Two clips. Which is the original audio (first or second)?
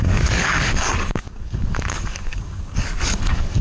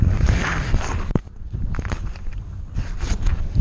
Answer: second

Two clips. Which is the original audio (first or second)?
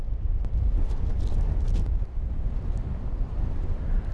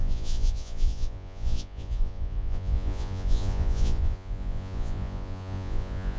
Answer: first